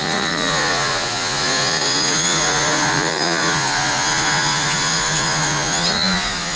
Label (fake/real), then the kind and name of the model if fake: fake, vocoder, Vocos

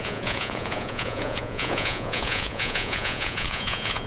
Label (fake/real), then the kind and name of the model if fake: fake, vocoder, Vocos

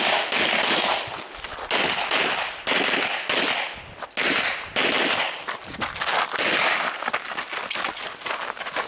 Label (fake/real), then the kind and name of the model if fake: real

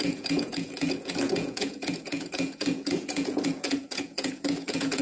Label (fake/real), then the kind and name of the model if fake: fake, vocoder, Vocos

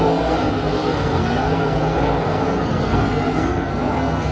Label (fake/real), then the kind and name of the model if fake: fake, codec, SNAC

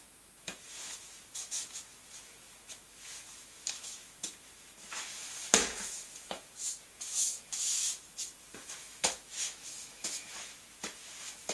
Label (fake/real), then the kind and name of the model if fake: fake, autoencoder, DAC-VAE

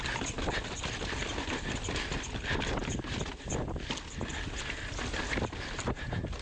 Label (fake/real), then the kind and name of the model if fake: real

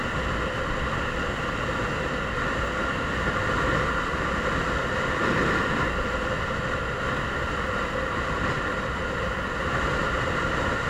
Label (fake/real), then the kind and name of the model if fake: real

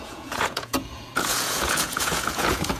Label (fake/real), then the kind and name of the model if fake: fake, vocoder, Vocos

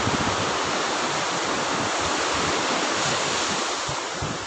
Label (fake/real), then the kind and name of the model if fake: real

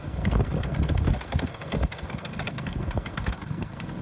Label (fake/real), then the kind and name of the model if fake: fake, codec, SNAC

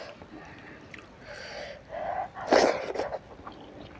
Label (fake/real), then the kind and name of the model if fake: real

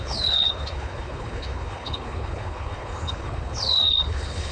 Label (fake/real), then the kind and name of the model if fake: fake, codec, HILCodec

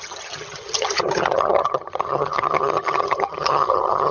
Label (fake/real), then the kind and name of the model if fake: fake, vocoder, HiFi-GAN